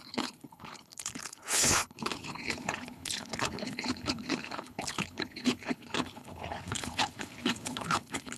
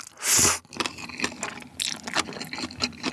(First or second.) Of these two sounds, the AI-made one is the first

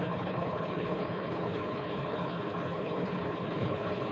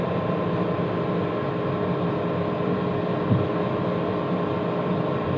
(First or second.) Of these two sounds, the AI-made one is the first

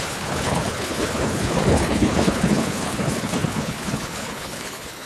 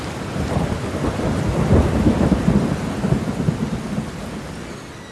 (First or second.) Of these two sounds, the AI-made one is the first